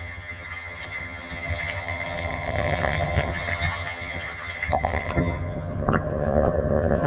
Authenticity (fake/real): fake